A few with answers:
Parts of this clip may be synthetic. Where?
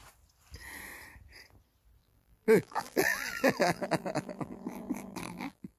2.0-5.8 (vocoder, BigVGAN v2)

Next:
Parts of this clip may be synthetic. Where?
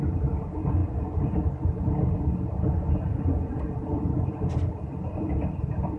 none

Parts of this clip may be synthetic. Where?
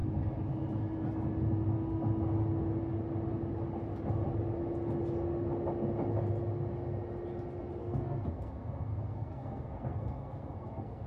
7.8-11.1 (codec, SNAC)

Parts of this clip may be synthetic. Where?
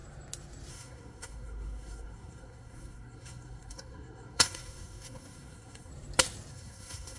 0.7-5.9 (codec, SNAC); 6.5-7.2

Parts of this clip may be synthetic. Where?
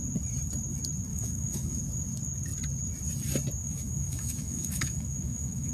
1.1-1.8 (autoencoder, DAC-VAE); 3.6-5.7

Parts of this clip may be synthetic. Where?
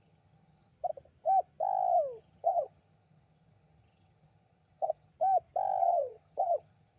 0.0-0.7 (vocoder, HiFi-GAN); 2.2-5.1; 5.8-7.0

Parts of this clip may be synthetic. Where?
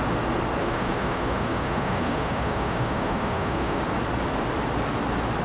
0.6-3.8 (autoencoder, DAC-VAE)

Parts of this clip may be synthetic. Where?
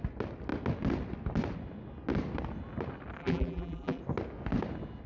3.2-4.0 (vocoder, BigVGAN v2)